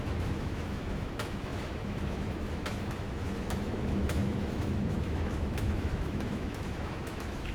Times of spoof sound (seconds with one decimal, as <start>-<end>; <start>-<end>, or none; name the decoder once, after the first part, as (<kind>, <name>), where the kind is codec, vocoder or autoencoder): 0.0-7.5 (autoencoder, DAC-VAE)